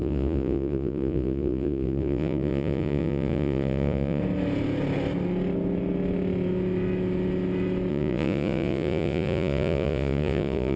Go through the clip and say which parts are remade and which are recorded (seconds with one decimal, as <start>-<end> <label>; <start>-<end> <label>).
0.0-4.2 remade; 4.2-7.9 recorded; 7.9-10.8 remade